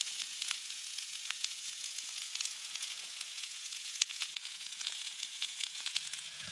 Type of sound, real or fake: fake